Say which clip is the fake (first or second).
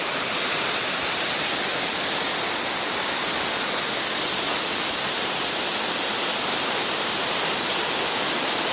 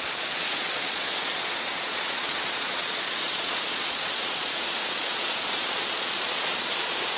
second